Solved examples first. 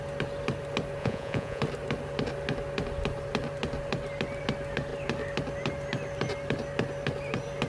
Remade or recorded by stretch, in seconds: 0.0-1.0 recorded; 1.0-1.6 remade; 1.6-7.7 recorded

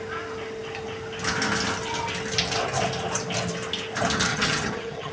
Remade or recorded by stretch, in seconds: 0.0-4.3 recorded; 4.3-5.1 remade

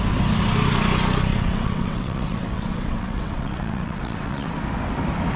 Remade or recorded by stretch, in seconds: 0.0-1.3 recorded; 1.3-4.5 remade; 4.5-5.4 recorded

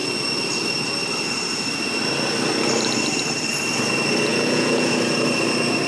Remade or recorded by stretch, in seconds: 0.0-4.3 recorded; 4.3-4.9 remade; 4.9-5.9 recorded